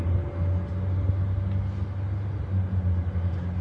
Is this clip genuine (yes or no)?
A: yes